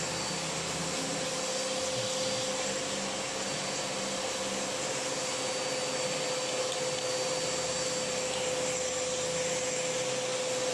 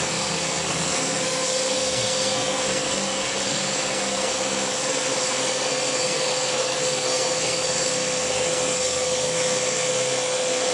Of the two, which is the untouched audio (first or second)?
first